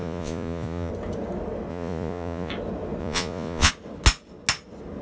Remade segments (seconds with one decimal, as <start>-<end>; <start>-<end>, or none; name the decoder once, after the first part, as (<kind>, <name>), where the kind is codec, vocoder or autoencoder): 0.0-0.9 (vocoder, Vocos); 1.7-2.5; 3.0-3.7